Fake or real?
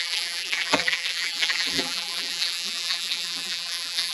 fake